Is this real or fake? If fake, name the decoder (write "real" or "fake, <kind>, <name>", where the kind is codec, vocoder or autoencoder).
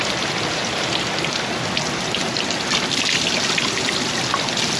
real